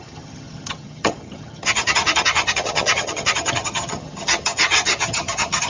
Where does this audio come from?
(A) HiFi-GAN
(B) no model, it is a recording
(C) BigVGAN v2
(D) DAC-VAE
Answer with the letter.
A